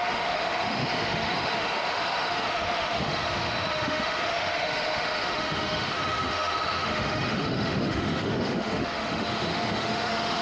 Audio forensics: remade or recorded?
remade